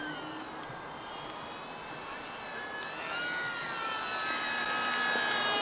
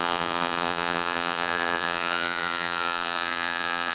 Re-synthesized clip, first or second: second